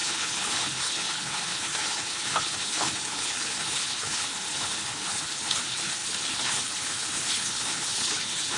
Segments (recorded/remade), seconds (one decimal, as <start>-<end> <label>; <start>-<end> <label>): 0.0-8.6 remade